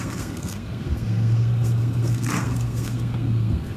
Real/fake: fake